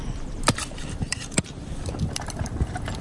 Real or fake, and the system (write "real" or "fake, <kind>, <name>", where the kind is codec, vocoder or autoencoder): fake, vocoder, BigVGAN v2